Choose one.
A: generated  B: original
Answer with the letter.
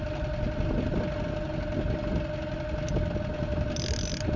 B